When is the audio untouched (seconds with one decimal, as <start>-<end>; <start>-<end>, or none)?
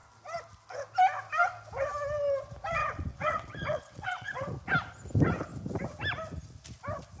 0.0-2.8; 4.5-7.2